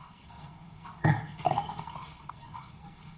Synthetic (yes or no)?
yes